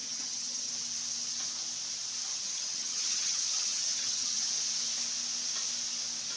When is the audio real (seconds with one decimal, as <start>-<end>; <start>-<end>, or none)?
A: 0.7-2.3; 4.5-6.4